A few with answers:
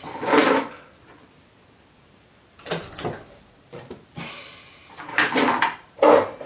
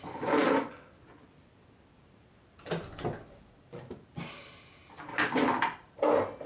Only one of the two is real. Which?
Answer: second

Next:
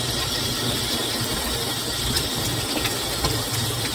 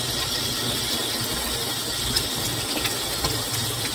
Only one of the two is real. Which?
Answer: second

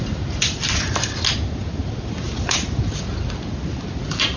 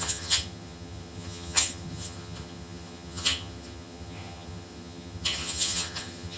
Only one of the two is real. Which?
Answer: first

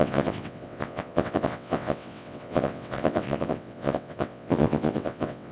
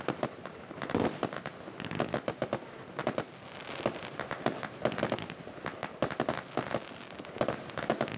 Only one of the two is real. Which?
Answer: second